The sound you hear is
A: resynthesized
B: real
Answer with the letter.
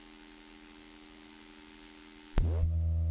B